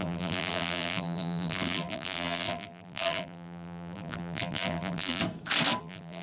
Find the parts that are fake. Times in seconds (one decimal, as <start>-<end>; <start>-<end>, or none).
0.0-5.2; 5.8-6.2